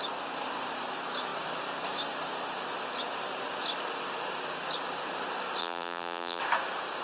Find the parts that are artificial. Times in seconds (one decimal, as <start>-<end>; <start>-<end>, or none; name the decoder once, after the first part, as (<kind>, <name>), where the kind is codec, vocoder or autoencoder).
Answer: 5.6-6.4 (vocoder, BigVGAN v2)